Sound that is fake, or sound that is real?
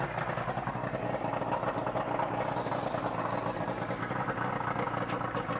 real